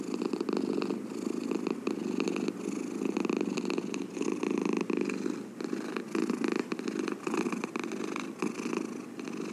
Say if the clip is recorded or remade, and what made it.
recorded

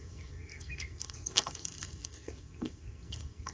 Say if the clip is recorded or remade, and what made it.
remade, codec, SNAC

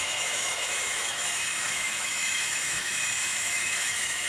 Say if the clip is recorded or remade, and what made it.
remade, autoencoder, DAC-VAE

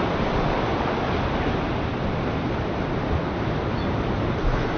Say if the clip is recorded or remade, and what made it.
recorded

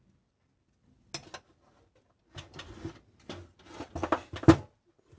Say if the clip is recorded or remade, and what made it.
recorded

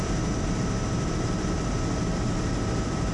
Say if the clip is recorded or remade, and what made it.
recorded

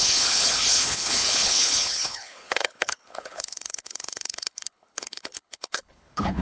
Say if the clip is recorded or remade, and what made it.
remade, codec, HILCodec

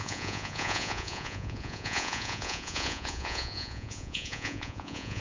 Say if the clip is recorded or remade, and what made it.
remade, vocoder, Vocos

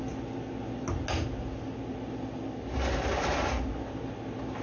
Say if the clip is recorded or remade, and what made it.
recorded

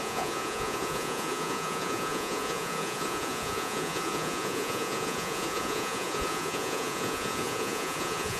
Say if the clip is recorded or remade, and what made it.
remade, vocoder, Vocos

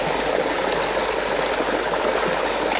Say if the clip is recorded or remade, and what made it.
recorded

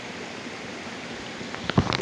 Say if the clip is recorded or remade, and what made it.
recorded